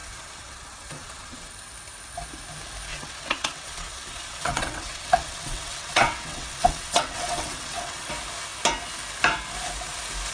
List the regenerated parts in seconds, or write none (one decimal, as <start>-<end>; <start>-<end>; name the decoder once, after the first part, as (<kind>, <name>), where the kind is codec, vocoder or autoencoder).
0.0-1.5 (vocoder, WaveNeXt); 2.9-8.1